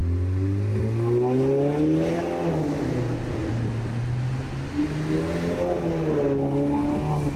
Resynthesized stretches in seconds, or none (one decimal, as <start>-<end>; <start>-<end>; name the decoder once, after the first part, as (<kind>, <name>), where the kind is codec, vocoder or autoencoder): none